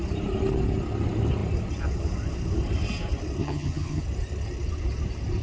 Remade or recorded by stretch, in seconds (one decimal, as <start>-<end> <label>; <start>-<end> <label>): 0.0-3.4 recorded; 3.4-4.0 remade; 4.0-5.4 recorded